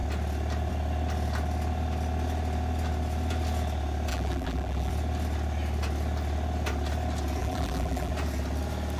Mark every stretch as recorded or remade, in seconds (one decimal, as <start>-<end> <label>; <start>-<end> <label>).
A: 0.0-4.1 recorded; 4.1-4.9 remade; 4.9-7.4 recorded; 7.4-8.1 remade; 8.1-9.0 recorded